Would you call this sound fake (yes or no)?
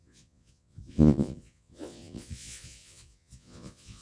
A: yes